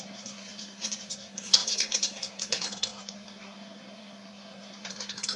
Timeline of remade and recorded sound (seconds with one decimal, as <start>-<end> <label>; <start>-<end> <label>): 0.0-5.4 remade